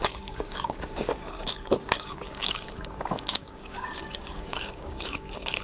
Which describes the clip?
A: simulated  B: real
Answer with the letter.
A